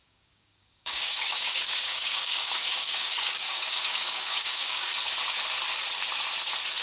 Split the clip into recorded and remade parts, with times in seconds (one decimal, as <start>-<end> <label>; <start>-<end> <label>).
0.0-4.9 remade; 4.9-6.8 recorded